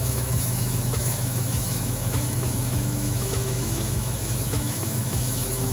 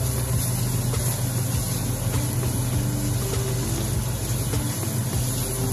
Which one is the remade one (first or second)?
first